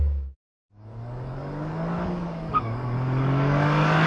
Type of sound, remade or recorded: remade